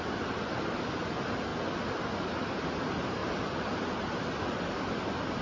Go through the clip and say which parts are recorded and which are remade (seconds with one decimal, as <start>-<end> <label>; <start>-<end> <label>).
0.0-5.4 recorded